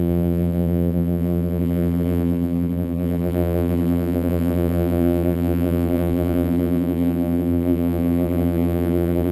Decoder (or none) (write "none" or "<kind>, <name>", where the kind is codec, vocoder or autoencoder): vocoder, BigVGAN v2